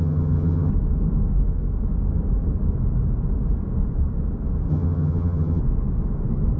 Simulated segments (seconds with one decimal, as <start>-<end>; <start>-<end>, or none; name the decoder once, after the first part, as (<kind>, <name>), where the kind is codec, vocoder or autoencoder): 0.0-0.7 (vocoder, HiFi-GAN); 4.7-5.6